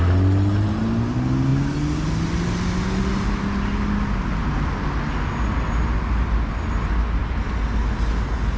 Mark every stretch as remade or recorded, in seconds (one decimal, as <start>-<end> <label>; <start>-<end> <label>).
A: 0.0-8.6 recorded